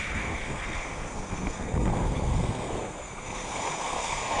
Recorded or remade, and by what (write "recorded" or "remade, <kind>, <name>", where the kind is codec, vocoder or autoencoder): remade, codec, SNAC